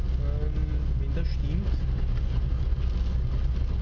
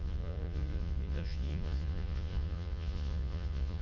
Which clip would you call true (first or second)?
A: first